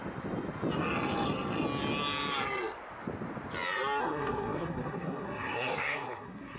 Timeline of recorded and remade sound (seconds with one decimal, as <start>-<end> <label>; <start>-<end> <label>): 0.0-4.0 recorded; 4.0-6.6 remade